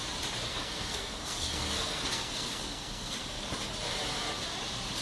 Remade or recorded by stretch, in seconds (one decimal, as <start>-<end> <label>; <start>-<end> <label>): 0.0-0.5 recorded; 0.5-3.5 remade; 3.5-5.0 recorded